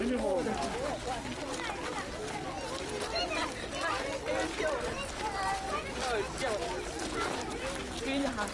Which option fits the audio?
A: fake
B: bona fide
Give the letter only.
B